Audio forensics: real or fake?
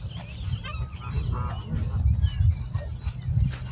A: real